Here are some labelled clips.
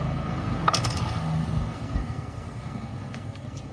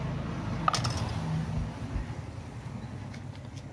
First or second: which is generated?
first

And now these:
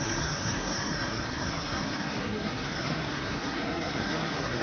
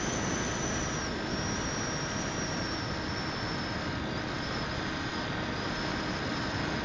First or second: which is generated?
first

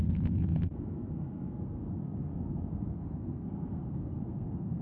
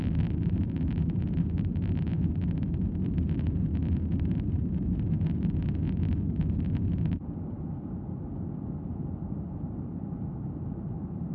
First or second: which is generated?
first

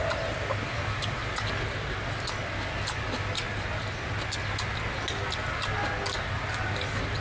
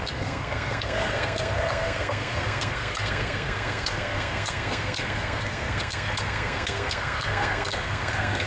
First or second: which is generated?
second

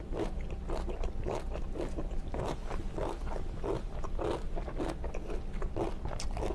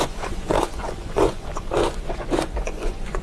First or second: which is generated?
second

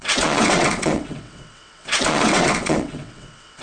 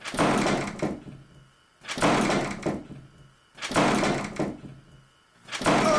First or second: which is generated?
first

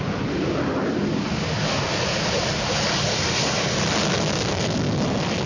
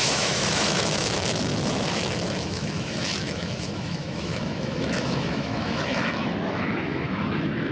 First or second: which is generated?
second